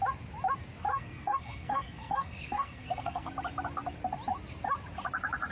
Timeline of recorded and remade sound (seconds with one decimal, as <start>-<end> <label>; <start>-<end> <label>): 0.0-0.9 recorded; 0.9-3.3 remade; 3.3-5.5 recorded